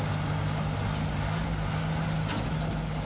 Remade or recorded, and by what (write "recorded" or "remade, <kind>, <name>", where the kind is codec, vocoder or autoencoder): recorded